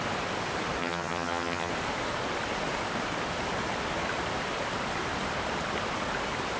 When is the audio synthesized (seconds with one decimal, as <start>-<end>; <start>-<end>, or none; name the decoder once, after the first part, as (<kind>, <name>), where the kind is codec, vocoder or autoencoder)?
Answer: 0.8-1.7 (vocoder, HiFi-GAN)